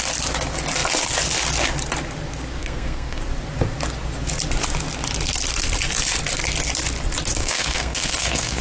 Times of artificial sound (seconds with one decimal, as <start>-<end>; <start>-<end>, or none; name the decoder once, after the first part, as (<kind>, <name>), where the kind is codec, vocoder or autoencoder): 2.6-3.2 (codec, SNAC); 7.4-8.6